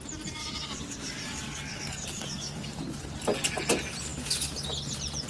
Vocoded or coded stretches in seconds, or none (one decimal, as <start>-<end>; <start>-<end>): 0.4-2.8